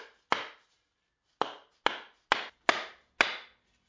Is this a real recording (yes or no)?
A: yes